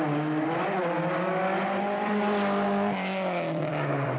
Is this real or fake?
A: fake